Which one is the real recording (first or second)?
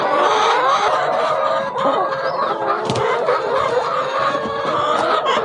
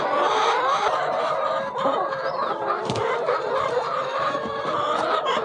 first